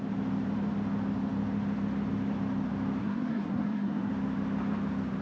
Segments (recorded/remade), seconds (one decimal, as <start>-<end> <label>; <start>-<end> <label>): 0.0-3.0 recorded; 3.0-4.1 remade; 4.1-5.2 recorded